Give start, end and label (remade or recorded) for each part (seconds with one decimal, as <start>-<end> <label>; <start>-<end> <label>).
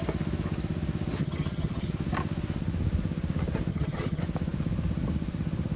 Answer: 0.0-1.2 recorded; 1.2-1.9 remade; 1.9-3.7 recorded; 3.7-4.2 remade; 4.2-5.8 recorded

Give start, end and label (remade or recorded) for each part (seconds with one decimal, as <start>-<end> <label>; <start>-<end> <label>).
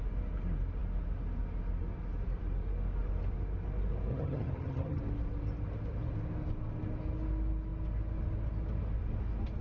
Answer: 0.0-4.1 recorded; 4.1-5.0 remade; 5.0-9.6 recorded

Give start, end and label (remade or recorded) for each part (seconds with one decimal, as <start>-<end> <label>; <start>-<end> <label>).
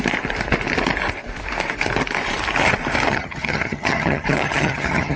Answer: 0.0-3.1 recorded; 3.1-5.2 remade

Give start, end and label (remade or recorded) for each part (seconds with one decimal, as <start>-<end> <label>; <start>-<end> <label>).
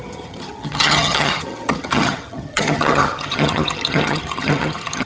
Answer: 0.0-5.1 remade